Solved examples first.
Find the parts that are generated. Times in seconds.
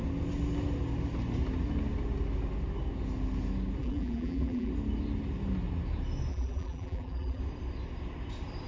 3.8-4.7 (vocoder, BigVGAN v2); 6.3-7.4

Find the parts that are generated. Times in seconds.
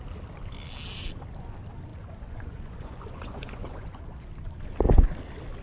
1.9-4.3 (vocoder, Vocos)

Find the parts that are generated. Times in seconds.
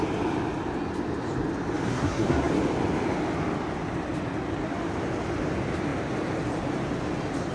1.9-2.5 (codec, SNAC)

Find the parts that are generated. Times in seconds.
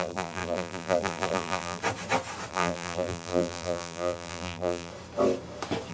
0.0-1.8 (vocoder, BigVGAN v2); 2.5-4.9